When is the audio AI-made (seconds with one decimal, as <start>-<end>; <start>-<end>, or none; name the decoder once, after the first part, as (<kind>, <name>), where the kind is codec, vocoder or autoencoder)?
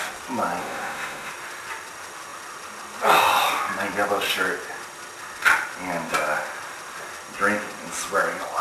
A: 0.6-1.3 (autoencoder, DAC-VAE)